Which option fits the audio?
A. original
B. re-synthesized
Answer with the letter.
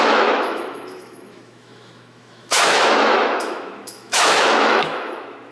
B